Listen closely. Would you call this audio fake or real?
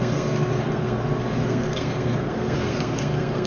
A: fake